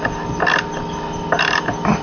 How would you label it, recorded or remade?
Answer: recorded